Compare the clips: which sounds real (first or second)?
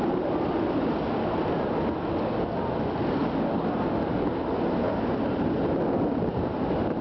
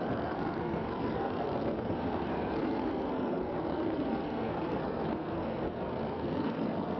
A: first